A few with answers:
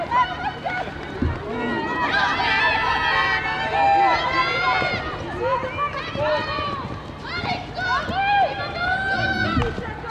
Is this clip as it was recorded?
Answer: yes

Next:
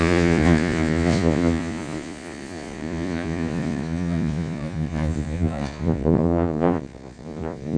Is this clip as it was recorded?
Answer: no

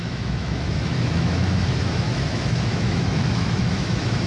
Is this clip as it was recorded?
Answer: no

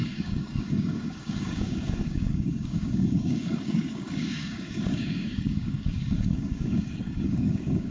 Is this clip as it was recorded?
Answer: no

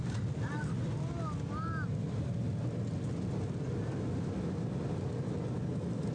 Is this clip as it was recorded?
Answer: yes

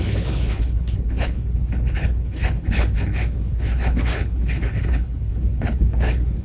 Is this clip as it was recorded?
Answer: no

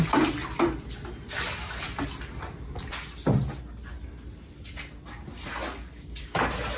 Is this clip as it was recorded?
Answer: yes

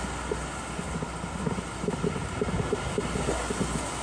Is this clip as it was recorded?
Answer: yes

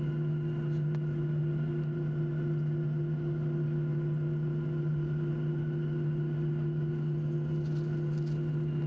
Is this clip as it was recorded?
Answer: yes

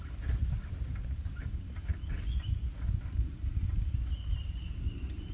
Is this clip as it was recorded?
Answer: yes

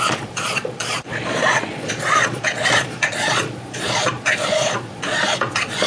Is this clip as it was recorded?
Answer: no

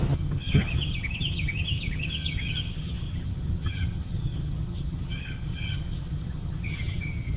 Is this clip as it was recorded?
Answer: no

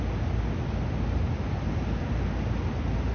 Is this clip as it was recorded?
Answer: yes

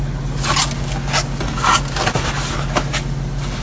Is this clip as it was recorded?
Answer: yes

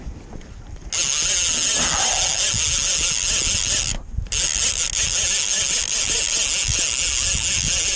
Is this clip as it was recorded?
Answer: yes